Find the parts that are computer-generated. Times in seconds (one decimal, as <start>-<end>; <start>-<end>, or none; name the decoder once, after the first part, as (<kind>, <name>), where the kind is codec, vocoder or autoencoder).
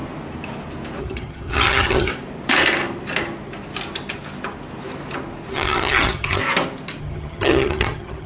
1.0-2.1 (vocoder, HiFi-GAN); 5.5-6.4; 7.0-8.3